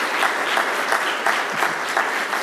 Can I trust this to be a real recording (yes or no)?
yes